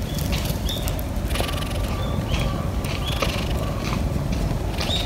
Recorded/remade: recorded